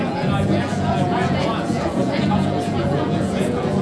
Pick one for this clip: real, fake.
fake